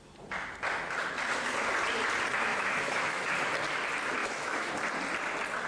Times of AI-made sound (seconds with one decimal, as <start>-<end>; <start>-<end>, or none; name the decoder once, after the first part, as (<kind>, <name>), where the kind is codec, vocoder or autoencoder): 2.5-3.3 (autoencoder, DAC-VAE); 4.2-4.7